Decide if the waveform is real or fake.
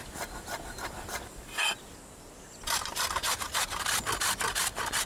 real